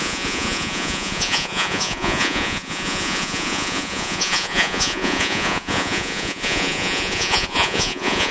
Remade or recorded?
remade